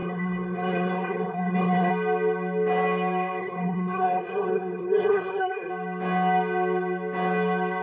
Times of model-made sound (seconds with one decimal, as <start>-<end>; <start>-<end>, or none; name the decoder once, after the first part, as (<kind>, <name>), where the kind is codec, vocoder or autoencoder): 0.0-1.9 (codec, SNAC); 3.4-5.7